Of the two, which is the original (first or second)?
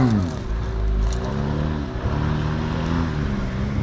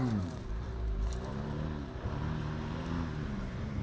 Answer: first